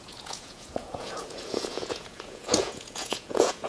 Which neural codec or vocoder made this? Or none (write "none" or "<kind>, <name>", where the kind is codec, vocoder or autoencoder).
vocoder, Vocos